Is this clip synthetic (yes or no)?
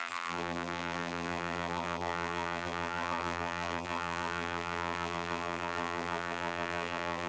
yes